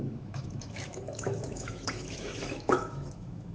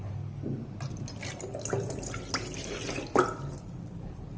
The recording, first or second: second